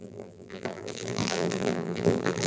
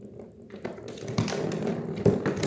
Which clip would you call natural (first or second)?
second